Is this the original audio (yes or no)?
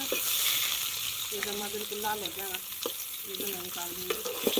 no